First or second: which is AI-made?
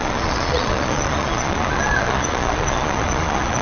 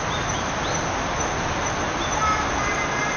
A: first